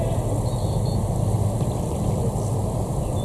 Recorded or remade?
recorded